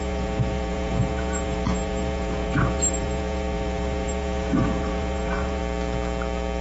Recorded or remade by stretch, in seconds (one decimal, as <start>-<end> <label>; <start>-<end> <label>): 0.0-5.6 remade; 5.6-6.6 recorded